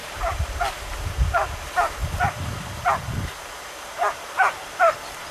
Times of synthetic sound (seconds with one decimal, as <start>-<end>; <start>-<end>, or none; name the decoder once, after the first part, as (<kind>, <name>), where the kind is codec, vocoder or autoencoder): 0.0-2.0 (vocoder, BigVGAN v2); 3.9-5.3